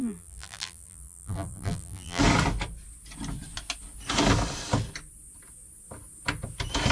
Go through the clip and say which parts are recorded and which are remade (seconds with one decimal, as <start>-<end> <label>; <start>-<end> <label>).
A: 0.0-2.2 remade; 2.2-6.9 recorded